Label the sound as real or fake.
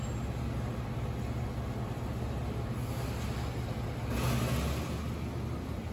real